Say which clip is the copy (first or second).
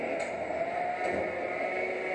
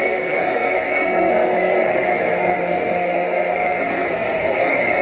second